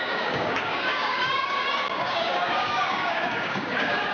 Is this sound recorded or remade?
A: remade